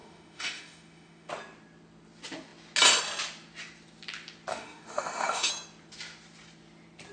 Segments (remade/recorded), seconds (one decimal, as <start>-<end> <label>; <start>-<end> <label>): 0.0-1.3 remade; 1.3-4.5 recorded; 4.5-5.5 remade; 5.5-7.1 recorded